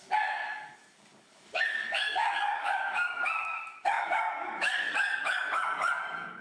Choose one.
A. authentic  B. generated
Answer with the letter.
B